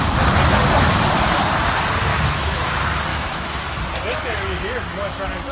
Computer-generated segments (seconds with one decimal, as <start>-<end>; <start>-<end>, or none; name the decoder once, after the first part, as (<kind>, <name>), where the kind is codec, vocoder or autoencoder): 2.1-2.7 (autoencoder, DAC-VAE); 3.1-3.8